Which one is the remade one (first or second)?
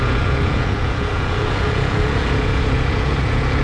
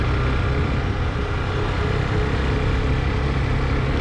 first